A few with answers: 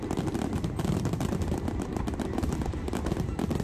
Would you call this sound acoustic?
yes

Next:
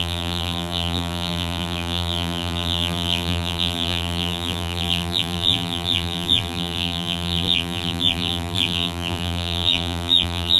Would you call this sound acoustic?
no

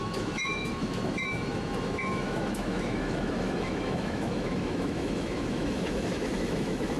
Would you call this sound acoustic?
no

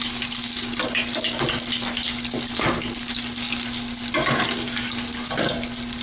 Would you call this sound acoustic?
yes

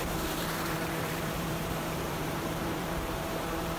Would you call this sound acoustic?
no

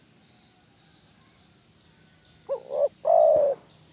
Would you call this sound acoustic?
yes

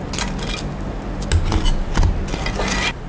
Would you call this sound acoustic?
yes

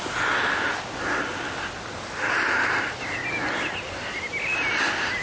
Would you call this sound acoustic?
yes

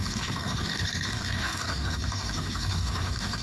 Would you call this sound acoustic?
no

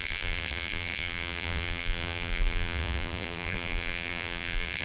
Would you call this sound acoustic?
no